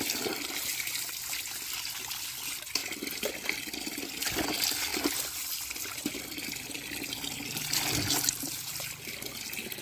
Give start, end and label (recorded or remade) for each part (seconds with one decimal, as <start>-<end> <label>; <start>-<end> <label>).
0.0-9.8 recorded